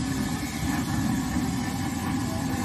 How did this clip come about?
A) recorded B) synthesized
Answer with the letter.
A